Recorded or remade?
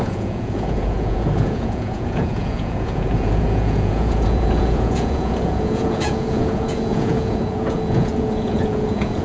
remade